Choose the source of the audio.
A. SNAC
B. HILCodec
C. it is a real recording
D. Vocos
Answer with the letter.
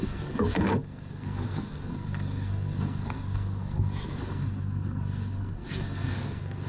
A